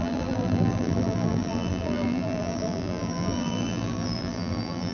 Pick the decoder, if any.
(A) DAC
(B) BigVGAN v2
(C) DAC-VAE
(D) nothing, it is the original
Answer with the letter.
B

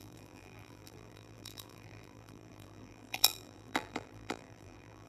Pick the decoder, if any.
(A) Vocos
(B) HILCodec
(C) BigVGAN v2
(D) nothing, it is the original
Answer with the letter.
C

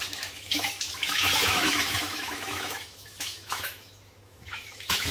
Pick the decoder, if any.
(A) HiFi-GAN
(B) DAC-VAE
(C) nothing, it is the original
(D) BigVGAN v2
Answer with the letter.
B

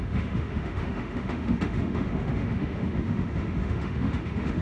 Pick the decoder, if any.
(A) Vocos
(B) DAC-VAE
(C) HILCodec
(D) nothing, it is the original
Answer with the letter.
B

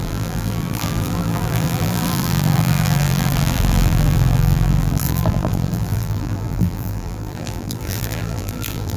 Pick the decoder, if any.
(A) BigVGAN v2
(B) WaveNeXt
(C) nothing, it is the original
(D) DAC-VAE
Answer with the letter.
A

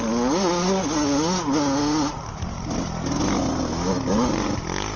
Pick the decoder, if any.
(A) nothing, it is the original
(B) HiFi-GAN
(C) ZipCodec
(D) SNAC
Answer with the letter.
A